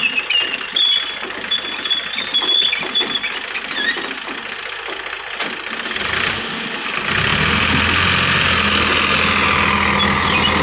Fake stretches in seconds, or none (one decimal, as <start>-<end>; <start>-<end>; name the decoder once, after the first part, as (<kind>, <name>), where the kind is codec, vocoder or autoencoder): none